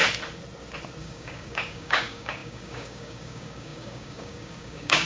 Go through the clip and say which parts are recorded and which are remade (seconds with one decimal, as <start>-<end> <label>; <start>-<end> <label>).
0.0-1.0 recorded; 1.0-5.1 remade